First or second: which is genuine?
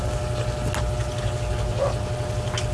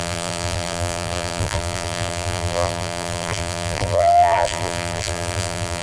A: first